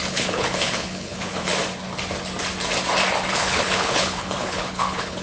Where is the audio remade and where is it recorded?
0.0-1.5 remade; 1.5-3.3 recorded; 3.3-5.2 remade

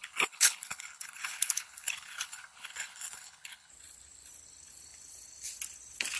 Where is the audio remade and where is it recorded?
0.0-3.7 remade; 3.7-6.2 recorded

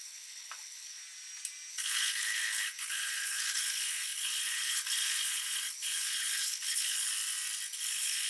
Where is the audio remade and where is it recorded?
0.0-1.0 remade; 1.0-1.7 recorded; 1.7-7.1 remade; 7.1-7.7 recorded; 7.7-8.3 remade

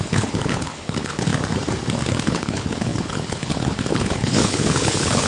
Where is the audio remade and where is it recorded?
0.0-1.3 remade; 1.3-2.1 recorded; 2.1-5.3 remade

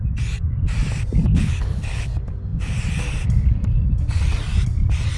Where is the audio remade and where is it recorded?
0.0-1.3 recorded; 1.3-2.1 remade; 2.1-5.2 recorded

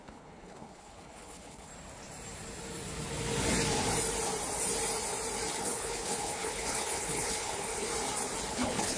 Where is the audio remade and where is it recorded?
0.0-1.7 remade; 1.7-5.5 recorded; 5.5-7.9 remade; 7.9-8.5 recorded; 8.5-9.0 remade

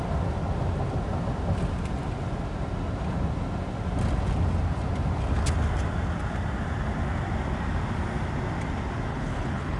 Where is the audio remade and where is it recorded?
0.0-9.1 recorded; 9.1-9.8 remade